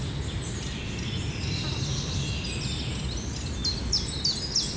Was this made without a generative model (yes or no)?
yes